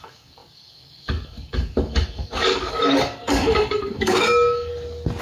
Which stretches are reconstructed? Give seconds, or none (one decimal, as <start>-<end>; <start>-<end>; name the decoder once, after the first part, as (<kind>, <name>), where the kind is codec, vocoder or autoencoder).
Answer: 0.0-4.7 (codec, DAC)